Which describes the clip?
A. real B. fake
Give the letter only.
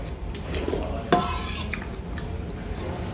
A